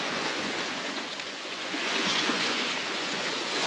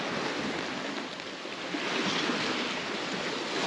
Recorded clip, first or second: second